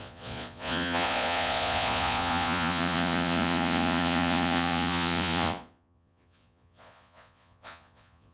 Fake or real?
fake